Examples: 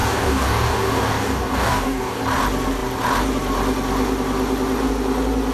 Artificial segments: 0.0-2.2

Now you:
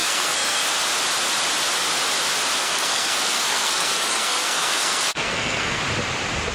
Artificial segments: 0.0-0.7; 2.6-5.8

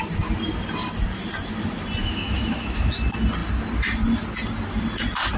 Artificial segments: 2.0-2.9

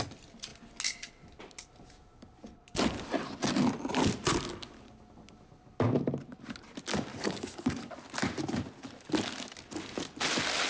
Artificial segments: 7.1-7.9

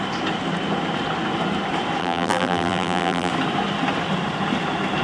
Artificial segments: 2.0-3.3